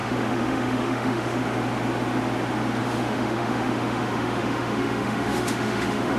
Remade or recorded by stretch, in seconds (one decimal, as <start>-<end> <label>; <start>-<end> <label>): 0.0-1.4 remade; 1.4-2.8 recorded; 2.8-6.2 remade